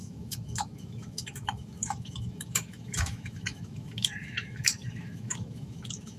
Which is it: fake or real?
fake